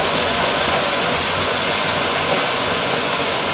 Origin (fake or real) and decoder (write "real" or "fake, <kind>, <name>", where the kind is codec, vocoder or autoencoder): fake, vocoder, Vocos